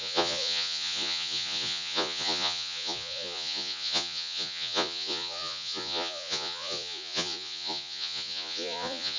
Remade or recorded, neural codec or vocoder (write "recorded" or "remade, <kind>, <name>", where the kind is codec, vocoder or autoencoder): remade, vocoder, Vocos